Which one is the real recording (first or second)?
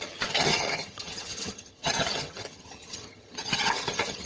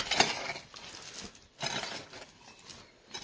second